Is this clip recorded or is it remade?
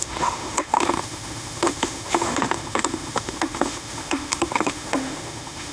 remade